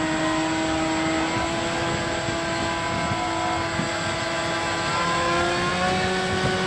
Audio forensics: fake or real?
real